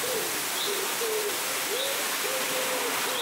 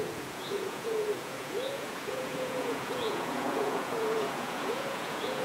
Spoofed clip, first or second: second